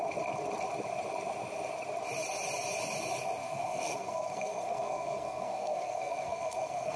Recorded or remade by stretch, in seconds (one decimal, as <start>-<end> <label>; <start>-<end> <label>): 0.0-3.4 recorded; 3.4-7.0 remade